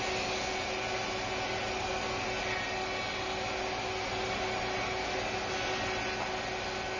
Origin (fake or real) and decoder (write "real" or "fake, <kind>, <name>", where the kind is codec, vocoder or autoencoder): real